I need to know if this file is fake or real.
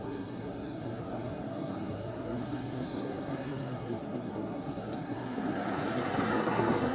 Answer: fake